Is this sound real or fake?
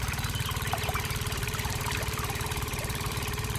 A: fake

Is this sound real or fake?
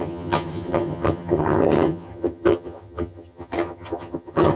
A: fake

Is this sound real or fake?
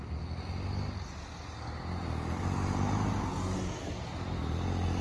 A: real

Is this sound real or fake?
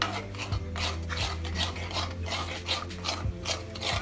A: real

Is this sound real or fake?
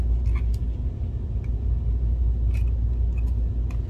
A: real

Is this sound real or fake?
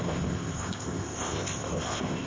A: fake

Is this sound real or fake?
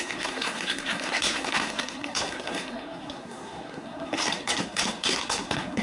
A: fake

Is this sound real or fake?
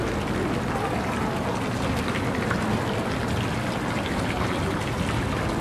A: real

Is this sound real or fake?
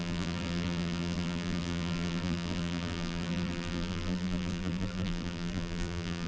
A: fake